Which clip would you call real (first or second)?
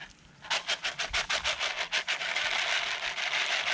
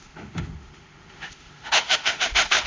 first